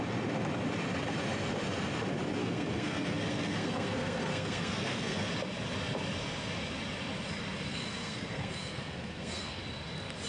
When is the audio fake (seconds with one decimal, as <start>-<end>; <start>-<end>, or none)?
2.4-5.3; 7.7-9.6